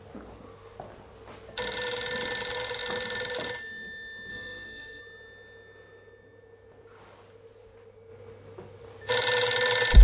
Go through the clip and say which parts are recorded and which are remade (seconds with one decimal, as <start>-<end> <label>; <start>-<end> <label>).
0.0-4.3 recorded; 4.3-5.0 remade; 5.0-10.0 recorded